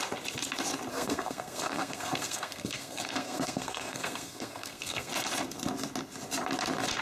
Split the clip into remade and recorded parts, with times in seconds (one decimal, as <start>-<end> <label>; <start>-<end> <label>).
0.0-0.9 recorded; 0.9-5.1 remade; 5.1-7.0 recorded